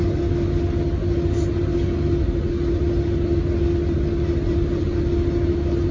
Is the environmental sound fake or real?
real